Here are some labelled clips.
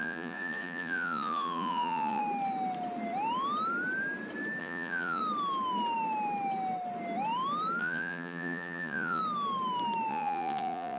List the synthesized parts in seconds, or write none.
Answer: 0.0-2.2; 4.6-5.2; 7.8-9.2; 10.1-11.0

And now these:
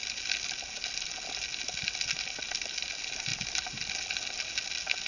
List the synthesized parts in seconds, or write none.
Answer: none

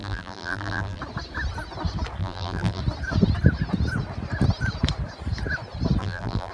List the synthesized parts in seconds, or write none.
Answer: 0.0-1.0; 2.2-2.8; 6.0-6.5

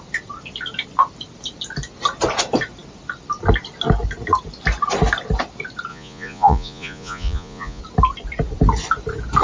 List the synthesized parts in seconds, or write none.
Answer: 5.9-7.8

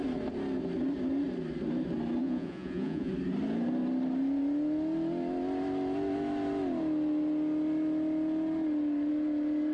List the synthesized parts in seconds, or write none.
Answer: 2.2-3.1

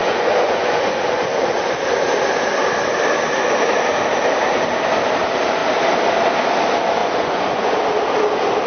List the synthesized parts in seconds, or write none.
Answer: 0.0-1.2; 7.0-7.8